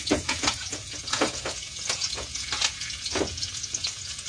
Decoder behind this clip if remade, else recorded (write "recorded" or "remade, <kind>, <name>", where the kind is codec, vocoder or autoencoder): remade, vocoder, Vocos